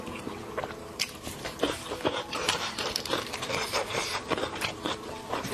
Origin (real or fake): fake